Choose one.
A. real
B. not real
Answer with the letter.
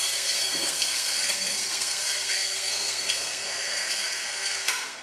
B